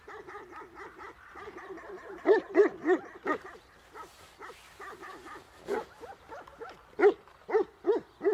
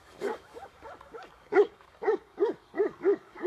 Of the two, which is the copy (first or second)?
second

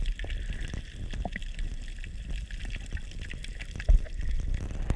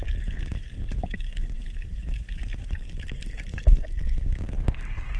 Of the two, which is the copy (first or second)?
second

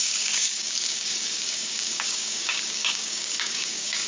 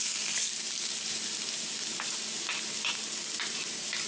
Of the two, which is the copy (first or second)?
first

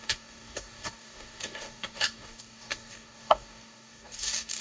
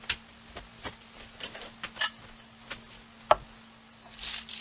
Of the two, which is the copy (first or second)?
first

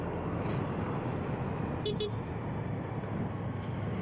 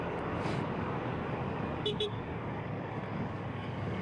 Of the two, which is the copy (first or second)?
second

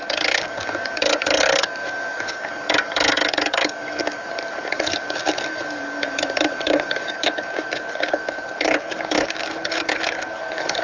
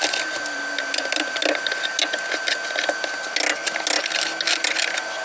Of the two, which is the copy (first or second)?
first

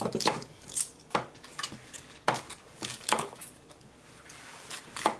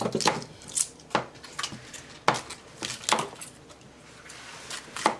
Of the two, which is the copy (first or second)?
first